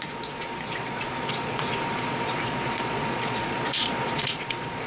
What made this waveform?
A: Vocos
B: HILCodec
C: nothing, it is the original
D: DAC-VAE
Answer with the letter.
A